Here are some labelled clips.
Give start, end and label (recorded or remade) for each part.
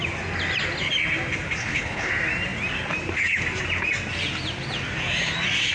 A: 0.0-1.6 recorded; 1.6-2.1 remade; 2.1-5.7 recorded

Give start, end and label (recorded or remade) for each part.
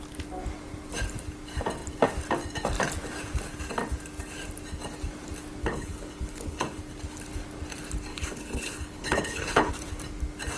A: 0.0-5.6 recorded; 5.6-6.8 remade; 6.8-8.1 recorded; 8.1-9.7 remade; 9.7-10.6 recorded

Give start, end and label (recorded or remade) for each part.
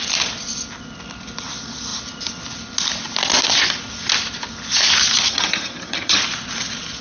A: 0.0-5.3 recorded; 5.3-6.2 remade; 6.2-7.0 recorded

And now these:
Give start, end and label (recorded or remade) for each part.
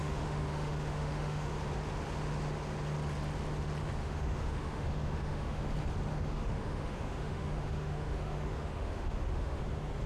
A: 0.0-1.5 remade; 1.5-4.0 recorded; 4.0-5.6 remade; 5.6-6.1 recorded; 6.1-9.6 remade; 9.6-10.1 recorded